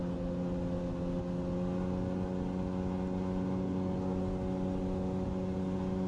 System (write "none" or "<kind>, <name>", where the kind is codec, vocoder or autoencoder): none